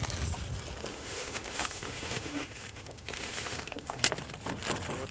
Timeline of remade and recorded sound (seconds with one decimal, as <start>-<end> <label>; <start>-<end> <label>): 0.0-0.9 recorded; 0.9-4.0 remade; 4.0-5.1 recorded